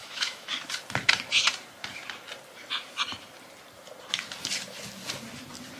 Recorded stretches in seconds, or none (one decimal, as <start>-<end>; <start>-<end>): 0.5-5.8